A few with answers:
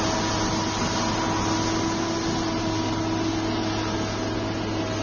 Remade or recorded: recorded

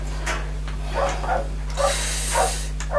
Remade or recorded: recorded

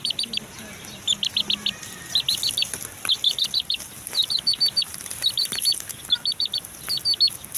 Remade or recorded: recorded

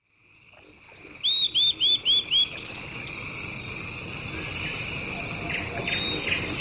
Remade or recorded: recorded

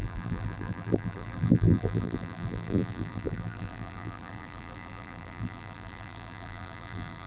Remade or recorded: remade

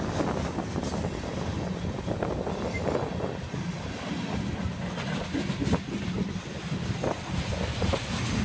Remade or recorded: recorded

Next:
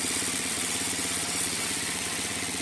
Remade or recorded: remade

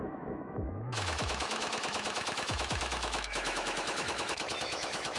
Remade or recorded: remade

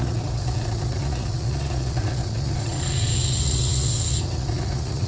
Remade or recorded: remade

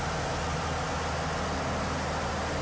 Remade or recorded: recorded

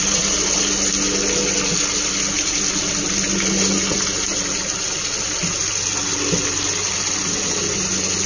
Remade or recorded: recorded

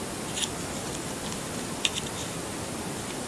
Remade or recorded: recorded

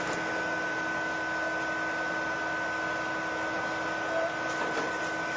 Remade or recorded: recorded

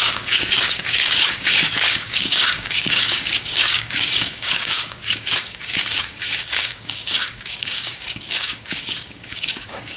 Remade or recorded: remade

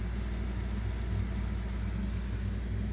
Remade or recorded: recorded